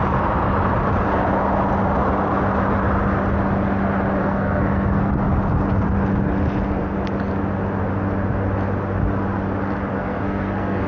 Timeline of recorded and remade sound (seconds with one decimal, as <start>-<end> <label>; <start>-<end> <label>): 0.0-4.2 recorded; 4.2-5.1 remade; 5.1-9.9 recorded; 9.9-10.9 remade